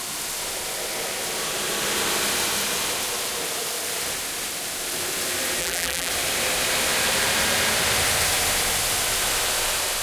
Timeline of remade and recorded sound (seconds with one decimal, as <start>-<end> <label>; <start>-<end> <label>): 0.0-5.6 recorded; 5.6-6.1 remade; 6.1-10.0 recorded